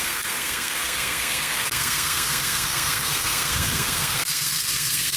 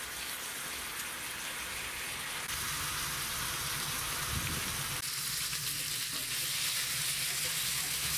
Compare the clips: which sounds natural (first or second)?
second